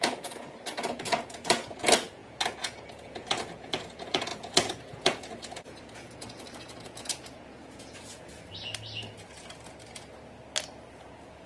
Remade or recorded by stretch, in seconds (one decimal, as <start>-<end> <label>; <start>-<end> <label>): 0.0-8.3 remade; 8.3-10.9 recorded; 10.9-11.5 remade